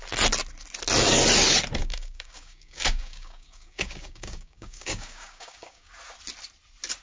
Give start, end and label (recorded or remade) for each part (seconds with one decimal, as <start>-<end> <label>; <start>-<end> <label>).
0.0-1.8 recorded; 1.8-5.9 remade; 5.9-7.0 recorded